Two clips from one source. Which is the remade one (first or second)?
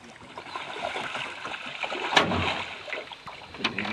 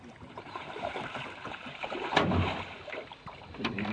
second